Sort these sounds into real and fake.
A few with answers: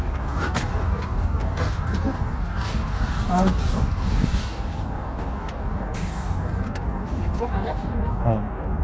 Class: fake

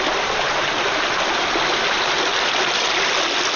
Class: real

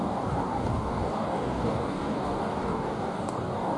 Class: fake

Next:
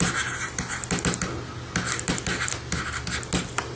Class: real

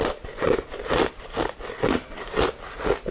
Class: real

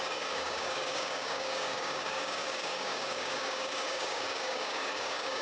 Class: fake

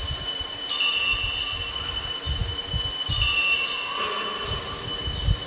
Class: real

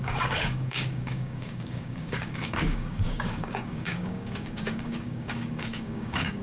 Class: fake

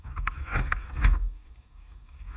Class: fake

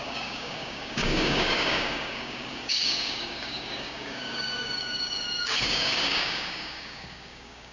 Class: fake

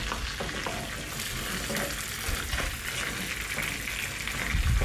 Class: real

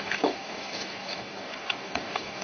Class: fake